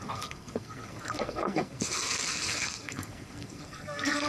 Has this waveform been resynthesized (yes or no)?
yes